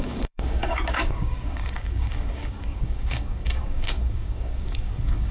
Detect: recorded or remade remade